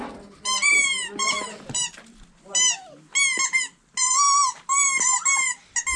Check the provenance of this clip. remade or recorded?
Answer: recorded